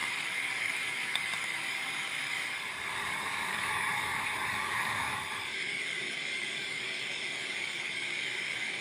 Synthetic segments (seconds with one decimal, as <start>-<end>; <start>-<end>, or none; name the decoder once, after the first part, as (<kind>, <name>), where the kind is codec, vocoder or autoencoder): 0.0-8.8 (codec, DAC)